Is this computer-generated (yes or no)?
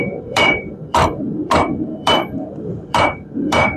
yes